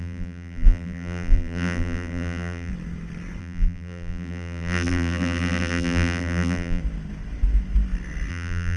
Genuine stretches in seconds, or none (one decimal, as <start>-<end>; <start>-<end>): 2.7-3.4; 6.8-8.3